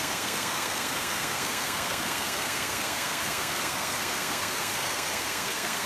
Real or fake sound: fake